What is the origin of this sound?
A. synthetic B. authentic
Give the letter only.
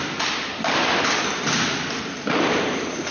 B